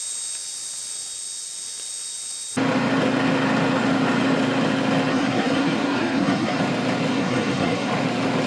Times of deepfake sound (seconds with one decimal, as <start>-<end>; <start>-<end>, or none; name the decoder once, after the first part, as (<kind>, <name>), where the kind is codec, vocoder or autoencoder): 5.1-6.6 (codec, SNAC); 7.1-7.9